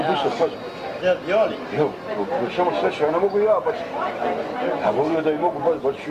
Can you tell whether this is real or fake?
real